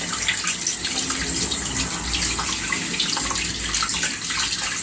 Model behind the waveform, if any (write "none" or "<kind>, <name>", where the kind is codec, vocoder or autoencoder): none